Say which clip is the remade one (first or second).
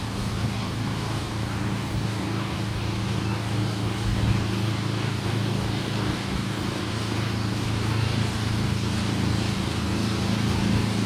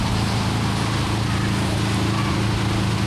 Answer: first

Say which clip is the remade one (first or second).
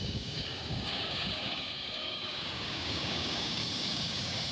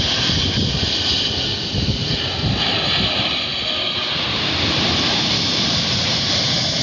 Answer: first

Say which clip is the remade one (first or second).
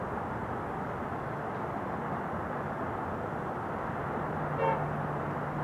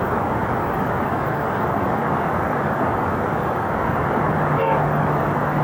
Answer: second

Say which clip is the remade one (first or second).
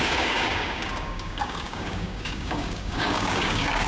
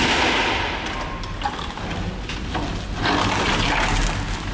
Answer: first